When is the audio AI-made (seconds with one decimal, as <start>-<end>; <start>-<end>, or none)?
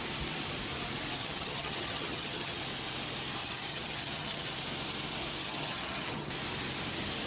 1.2-2.6; 3.4-4.5; 5.4-6.3